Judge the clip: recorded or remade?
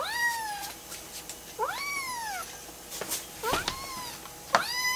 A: recorded